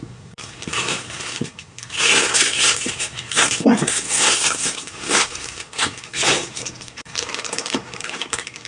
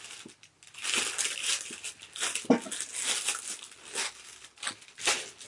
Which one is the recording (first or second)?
second